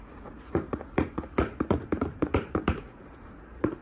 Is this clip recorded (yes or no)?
no